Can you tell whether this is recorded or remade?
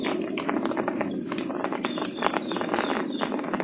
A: recorded